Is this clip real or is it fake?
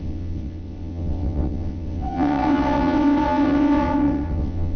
fake